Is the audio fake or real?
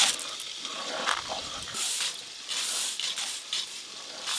real